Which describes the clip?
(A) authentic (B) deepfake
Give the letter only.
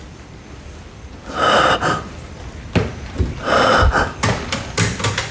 B